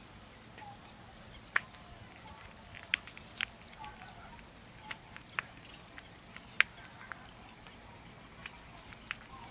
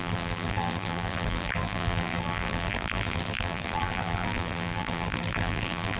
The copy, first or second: second